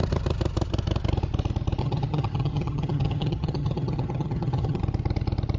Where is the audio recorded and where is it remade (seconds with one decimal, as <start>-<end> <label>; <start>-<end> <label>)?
0.0-1.8 recorded; 1.8-4.8 remade; 4.8-5.6 recorded